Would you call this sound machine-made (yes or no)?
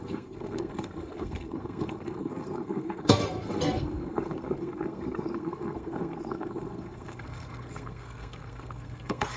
yes